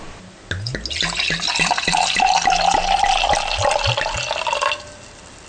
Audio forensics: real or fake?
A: real